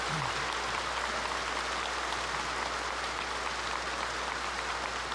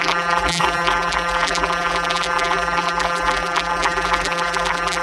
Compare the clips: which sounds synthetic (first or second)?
second